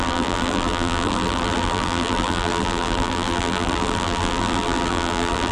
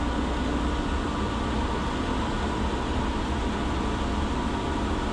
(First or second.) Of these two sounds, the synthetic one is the first